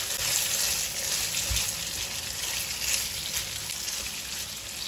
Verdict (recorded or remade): recorded